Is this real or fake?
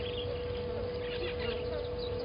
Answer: real